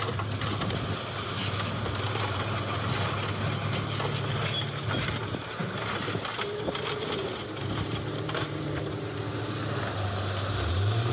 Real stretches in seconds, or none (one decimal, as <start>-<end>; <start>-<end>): 0.8-1.4; 2.5-5.2; 9.2-11.1